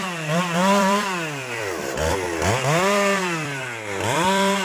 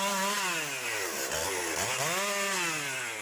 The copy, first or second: first